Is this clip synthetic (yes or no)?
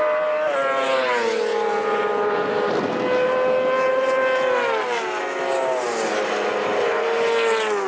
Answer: no